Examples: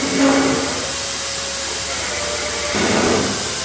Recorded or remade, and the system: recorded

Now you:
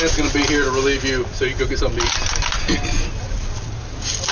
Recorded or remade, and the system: recorded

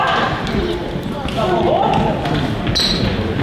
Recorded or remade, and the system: recorded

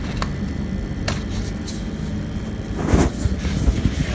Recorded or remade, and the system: recorded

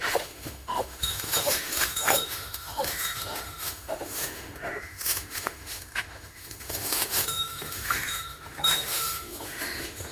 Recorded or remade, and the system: remade, autoencoder, DAC-VAE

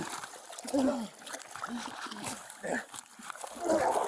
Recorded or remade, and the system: recorded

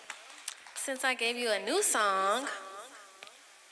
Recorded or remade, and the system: recorded